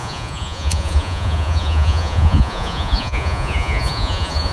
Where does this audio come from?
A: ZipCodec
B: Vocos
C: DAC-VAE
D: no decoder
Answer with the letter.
B